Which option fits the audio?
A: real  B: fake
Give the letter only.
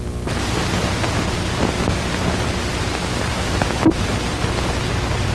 A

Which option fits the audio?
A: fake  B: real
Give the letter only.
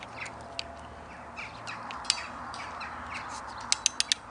B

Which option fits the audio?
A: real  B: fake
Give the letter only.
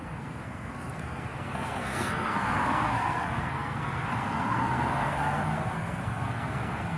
B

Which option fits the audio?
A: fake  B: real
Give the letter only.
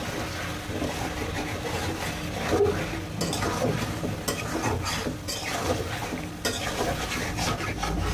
B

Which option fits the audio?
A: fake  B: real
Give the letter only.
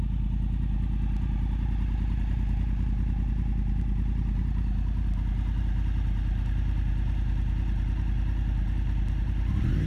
B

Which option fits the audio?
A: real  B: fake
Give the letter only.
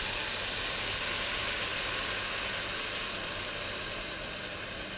A